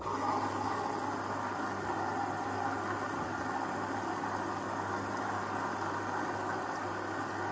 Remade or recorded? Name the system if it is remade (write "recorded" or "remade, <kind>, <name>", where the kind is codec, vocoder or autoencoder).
recorded